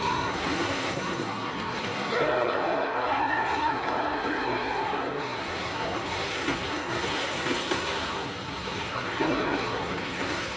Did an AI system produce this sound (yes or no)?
yes